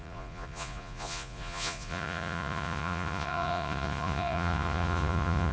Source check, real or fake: fake